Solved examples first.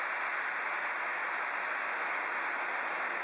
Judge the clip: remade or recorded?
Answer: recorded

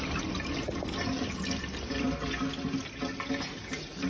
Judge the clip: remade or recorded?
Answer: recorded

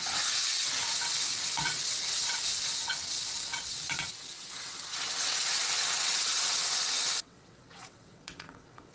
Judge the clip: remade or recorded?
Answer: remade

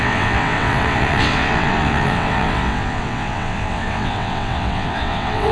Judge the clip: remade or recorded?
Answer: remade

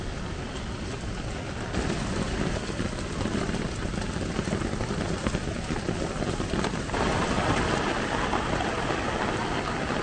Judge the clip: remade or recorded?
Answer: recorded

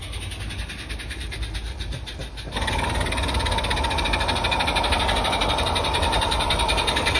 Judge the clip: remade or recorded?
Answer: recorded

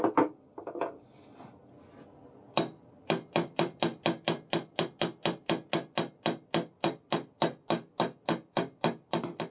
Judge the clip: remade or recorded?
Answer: recorded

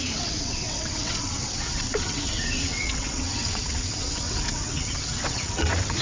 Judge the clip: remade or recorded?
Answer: remade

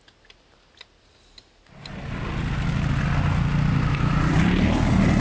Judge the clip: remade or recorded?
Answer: recorded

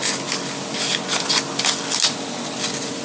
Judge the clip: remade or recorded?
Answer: recorded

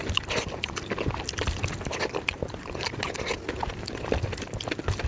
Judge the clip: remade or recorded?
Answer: recorded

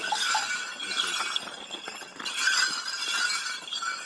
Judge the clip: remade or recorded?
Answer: recorded